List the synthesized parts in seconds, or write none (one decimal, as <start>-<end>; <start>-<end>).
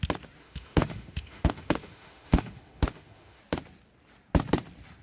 0.4-3.4